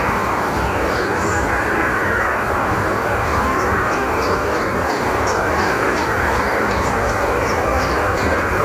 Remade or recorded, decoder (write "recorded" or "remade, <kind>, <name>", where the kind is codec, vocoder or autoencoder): remade, codec, DAC